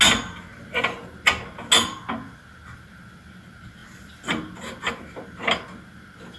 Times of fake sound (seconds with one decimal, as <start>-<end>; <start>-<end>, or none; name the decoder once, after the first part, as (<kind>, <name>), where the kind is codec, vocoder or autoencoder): none